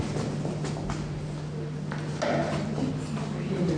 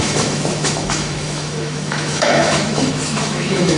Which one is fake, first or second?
second